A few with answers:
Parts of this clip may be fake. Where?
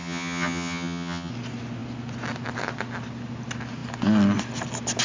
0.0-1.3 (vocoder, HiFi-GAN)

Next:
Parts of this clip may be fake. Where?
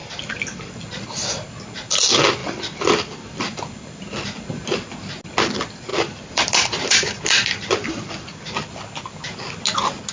0.0-0.7 (vocoder, BigVGAN v2); 2.4-3.4; 5.9-8.7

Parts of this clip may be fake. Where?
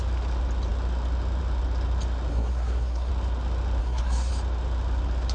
2.3-3.1 (codec, SNAC); 3.8-4.3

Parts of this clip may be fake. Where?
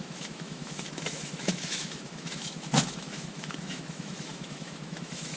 0.0-5.4 (autoencoder, DAC-VAE)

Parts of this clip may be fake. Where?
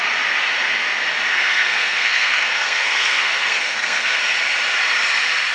1.3-4.2 (codec, SNAC)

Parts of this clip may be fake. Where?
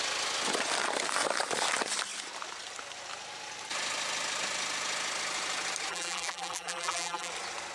5.9-7.3 (vocoder, BigVGAN v2)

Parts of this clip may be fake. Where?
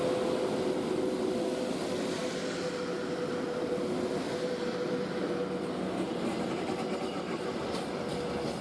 none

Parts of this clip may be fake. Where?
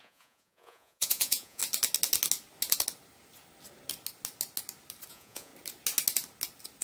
0.0-1.6 (vocoder, Vocos); 5.1-5.5